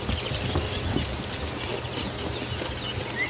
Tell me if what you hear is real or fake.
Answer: real